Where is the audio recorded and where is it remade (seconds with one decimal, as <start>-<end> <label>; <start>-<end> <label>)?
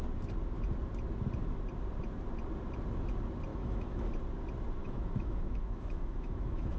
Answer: 0.0-3.5 recorded; 3.5-4.1 remade; 4.1-4.8 recorded; 4.8-6.8 remade